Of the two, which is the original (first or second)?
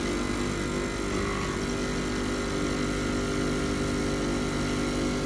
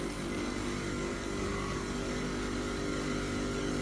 first